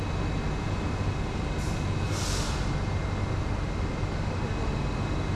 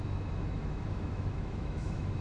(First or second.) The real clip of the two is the first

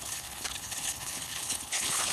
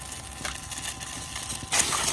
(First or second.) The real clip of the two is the second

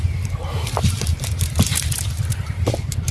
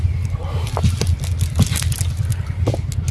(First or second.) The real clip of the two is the second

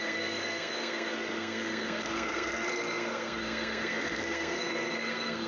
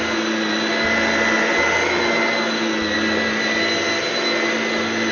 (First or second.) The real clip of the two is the second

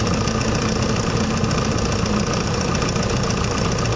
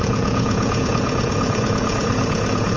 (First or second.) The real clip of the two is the first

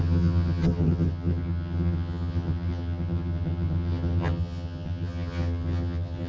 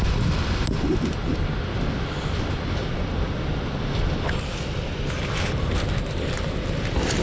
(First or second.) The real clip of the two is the second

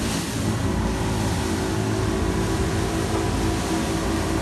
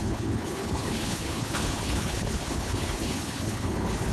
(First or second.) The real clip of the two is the first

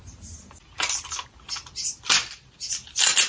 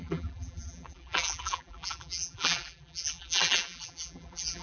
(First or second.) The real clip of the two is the first